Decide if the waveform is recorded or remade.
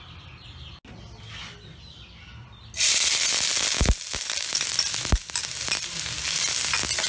recorded